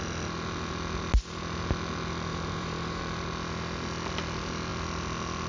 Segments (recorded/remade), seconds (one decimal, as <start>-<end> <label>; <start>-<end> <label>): 0.0-2.3 recorded; 2.3-3.0 remade; 3.0-5.5 recorded

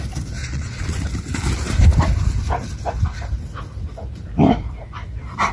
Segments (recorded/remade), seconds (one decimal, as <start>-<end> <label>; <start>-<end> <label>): 0.0-0.4 recorded; 0.4-1.0 remade; 1.0-5.5 recorded

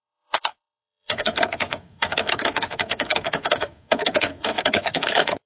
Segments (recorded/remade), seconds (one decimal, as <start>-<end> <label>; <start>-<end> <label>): 0.0-5.5 remade

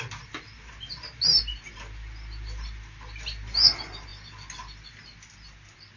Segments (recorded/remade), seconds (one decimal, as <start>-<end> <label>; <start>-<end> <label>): 0.0-6.0 recorded

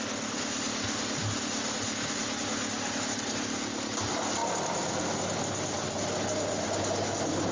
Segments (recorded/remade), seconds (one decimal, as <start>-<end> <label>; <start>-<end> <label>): 0.0-7.5 recorded